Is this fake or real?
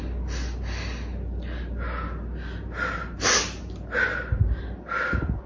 real